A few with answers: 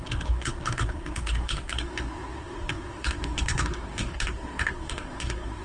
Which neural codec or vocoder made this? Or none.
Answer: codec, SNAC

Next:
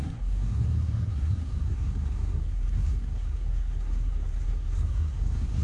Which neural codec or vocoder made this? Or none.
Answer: codec, SNAC